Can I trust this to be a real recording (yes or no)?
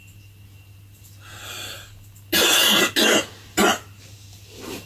yes